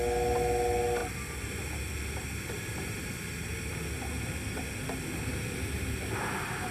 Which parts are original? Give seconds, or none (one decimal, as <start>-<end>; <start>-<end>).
0.0-6.7